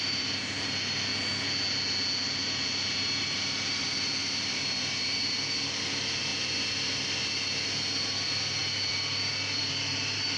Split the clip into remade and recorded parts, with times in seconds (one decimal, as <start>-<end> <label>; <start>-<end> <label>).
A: 0.0-1.1 remade; 1.1-3.2 recorded; 3.2-10.4 remade